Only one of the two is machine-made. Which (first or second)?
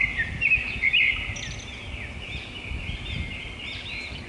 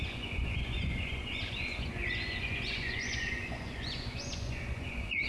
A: second